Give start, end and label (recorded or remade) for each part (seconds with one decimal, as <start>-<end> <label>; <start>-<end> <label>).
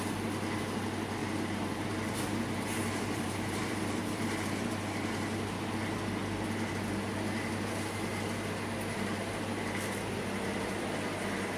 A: 0.0-1.2 recorded; 1.2-4.7 remade; 4.7-11.6 recorded